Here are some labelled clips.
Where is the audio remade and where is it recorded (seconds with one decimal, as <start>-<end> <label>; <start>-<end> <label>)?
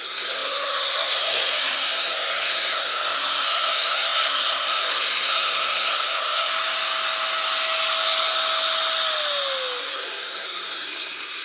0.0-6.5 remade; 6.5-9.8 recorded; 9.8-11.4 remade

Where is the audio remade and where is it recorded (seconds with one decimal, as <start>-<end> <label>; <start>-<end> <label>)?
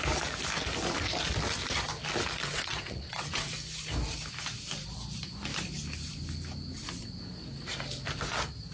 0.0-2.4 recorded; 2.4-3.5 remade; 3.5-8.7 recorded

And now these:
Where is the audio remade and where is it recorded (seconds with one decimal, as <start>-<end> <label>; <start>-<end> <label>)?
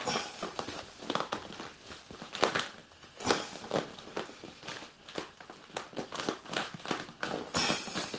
0.0-8.2 recorded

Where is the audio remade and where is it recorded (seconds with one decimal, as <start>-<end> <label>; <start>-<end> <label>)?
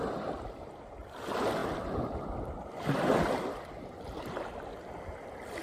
0.0-5.6 recorded